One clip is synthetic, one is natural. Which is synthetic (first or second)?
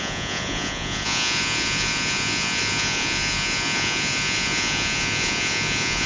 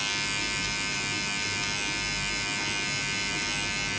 first